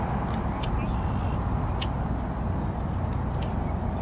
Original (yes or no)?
yes